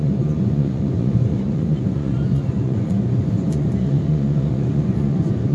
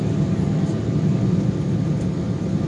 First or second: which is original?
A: second